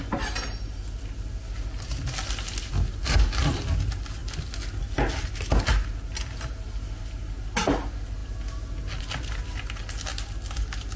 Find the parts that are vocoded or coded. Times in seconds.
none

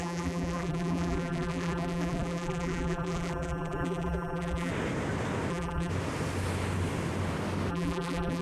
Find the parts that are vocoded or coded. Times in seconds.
0.0-4.7; 5.5-5.9; 7.7-8.4

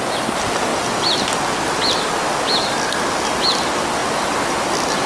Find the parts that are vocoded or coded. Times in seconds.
none

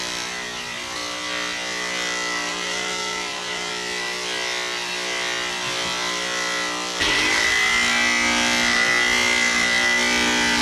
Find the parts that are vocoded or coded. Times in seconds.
2.5-3.7

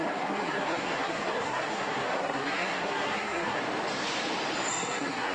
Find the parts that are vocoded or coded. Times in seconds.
0.0-3.6; 4.7-5.3

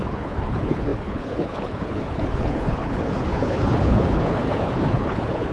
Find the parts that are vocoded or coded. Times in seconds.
0.0-5.5

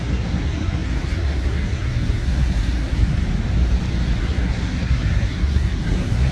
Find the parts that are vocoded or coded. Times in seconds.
0.0-3.2; 4.2-6.3

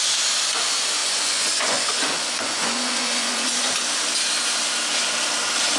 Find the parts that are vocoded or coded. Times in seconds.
1.0-3.7